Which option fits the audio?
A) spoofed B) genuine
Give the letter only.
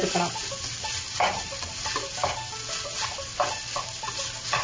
B